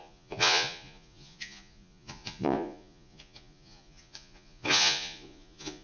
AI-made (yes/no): yes